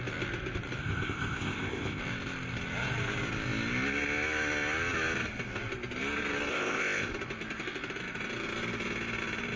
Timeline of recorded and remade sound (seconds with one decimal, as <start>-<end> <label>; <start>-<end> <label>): 0.0-0.8 recorded; 0.8-2.0 remade; 2.0-6.5 recorded; 6.5-7.1 remade; 7.1-9.6 recorded

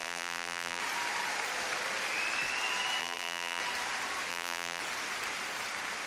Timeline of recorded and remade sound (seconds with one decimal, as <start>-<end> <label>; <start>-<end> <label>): 0.0-0.8 remade; 0.8-3.0 recorded; 3.0-3.6 remade; 3.6-4.3 recorded; 4.3-4.8 remade; 4.8-6.1 recorded